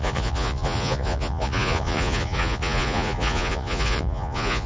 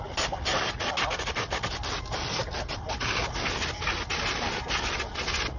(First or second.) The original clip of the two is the second